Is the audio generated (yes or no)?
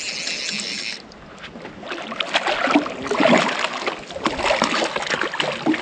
no